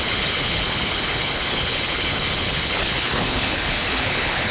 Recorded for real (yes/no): no